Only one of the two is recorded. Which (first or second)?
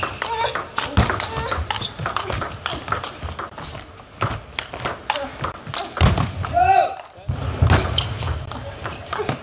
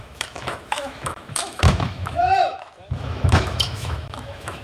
first